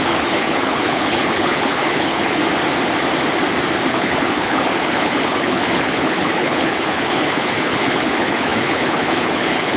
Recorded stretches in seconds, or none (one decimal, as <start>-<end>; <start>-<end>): 2.4-3.9